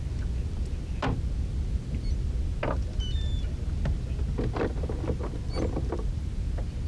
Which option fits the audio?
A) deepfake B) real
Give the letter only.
B